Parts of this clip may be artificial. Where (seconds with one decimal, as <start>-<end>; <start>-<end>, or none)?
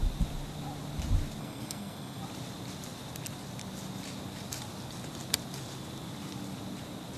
1.4-2.2